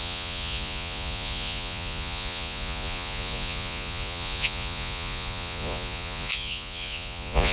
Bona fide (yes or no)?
no